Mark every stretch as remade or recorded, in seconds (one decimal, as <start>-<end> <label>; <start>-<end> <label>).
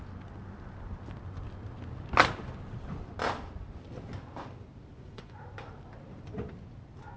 0.0-4.9 recorded; 4.9-5.4 remade; 5.4-7.2 recorded